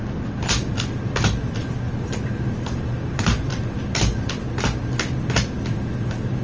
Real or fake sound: real